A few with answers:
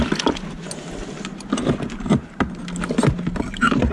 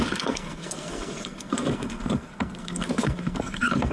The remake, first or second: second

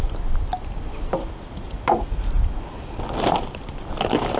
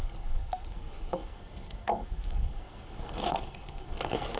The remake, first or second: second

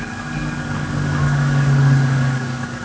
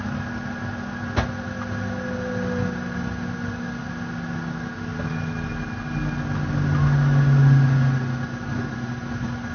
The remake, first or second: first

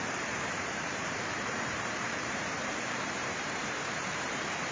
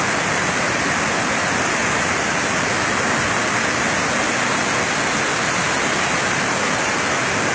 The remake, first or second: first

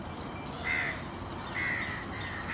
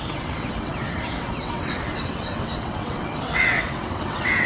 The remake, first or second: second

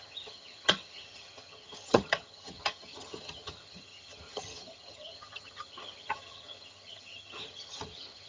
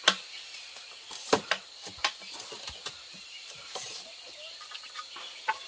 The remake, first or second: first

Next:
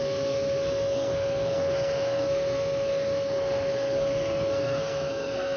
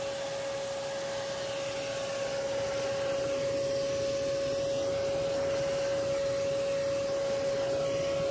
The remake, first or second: first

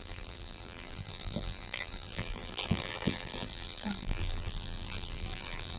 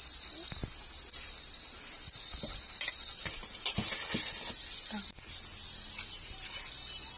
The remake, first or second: first